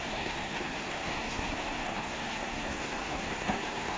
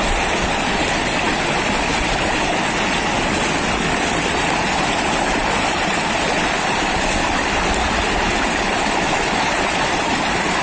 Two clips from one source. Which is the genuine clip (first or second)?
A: second